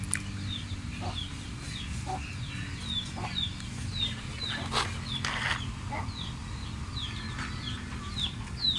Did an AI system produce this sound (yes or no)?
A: no